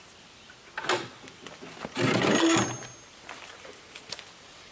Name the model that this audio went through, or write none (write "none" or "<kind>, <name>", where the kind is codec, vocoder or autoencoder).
none